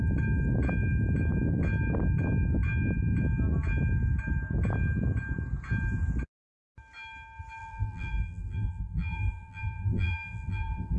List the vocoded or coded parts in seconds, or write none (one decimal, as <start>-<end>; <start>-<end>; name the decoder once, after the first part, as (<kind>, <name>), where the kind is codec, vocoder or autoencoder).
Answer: 7.6-11.0 (vocoder, BigVGAN v2)